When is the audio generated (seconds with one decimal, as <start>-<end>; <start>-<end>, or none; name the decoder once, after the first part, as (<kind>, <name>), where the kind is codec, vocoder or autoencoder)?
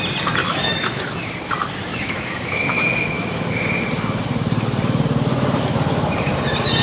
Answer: 0.4-1.3 (autoencoder, DAC-VAE); 1.9-3.5